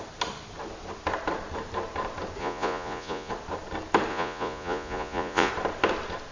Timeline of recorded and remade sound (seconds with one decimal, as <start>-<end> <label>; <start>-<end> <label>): 0.0-2.4 recorded; 2.4-3.3 remade; 3.3-4.1 recorded; 4.1-5.5 remade; 5.5-6.3 recorded